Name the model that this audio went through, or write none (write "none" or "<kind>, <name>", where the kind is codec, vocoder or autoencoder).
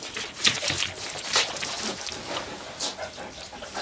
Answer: none